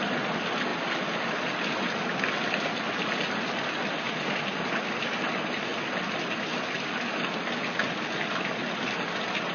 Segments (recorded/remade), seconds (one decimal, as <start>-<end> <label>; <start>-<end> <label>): 0.0-9.5 recorded